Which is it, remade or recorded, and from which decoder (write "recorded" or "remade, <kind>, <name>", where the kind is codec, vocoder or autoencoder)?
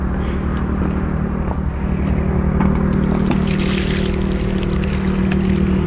recorded